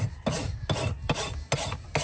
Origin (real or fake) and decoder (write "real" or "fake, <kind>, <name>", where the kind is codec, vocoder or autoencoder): real